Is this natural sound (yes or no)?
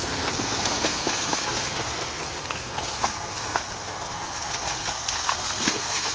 no